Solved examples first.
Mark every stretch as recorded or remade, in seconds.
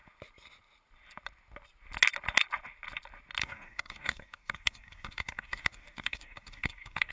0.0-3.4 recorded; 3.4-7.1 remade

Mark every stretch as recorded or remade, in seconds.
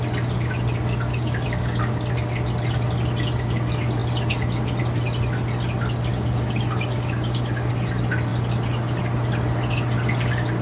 0.0-1.1 recorded; 1.1-1.8 remade; 1.8-6.1 recorded; 6.1-7.7 remade; 7.7-10.6 recorded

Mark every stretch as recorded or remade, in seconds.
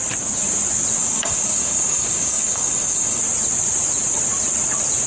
0.0-1.0 recorded; 1.0-3.2 remade; 3.2-5.1 recorded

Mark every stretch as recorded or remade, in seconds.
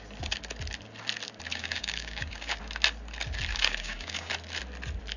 0.0-1.5 recorded; 1.5-2.6 remade; 2.6-3.5 recorded; 3.5-4.3 remade; 4.3-5.2 recorded